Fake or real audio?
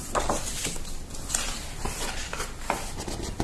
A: real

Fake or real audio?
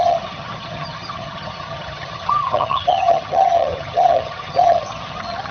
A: fake